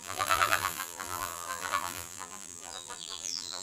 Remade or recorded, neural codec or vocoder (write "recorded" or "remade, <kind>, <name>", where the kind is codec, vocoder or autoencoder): remade, vocoder, BigVGAN v2